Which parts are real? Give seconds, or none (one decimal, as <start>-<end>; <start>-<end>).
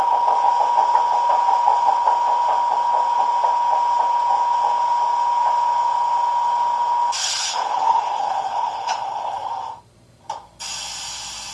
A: 0.0-7.2; 9.5-11.5